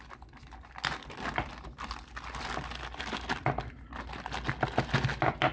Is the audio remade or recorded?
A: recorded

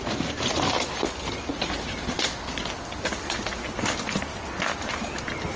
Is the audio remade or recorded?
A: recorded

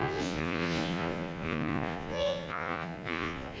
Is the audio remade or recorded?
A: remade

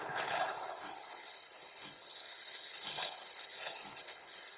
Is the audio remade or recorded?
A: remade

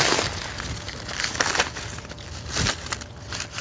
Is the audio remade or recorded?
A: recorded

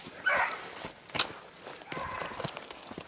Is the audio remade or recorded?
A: recorded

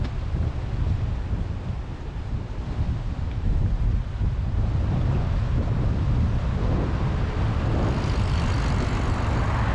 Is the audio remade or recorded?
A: recorded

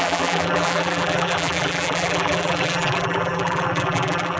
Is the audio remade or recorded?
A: remade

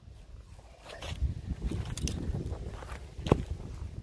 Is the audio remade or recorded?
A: recorded